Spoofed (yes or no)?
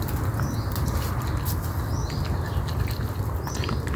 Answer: no